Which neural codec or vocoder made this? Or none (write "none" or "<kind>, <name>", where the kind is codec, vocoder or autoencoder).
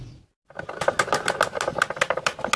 none